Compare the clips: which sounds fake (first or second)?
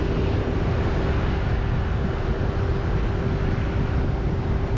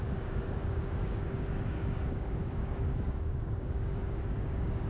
second